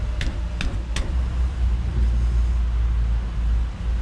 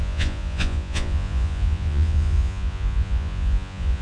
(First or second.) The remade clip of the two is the second